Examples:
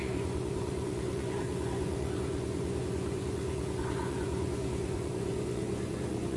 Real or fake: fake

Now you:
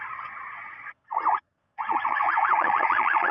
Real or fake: fake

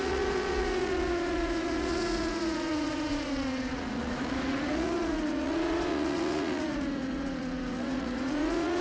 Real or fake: fake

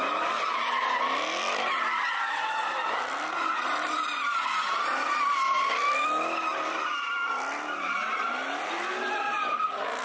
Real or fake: real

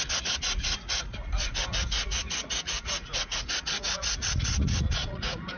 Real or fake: fake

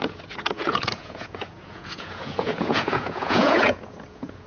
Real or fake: fake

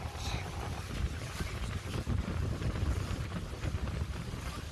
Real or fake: real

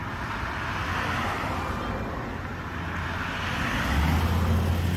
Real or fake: real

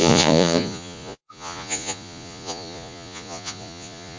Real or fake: fake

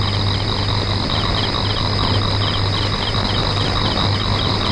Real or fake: real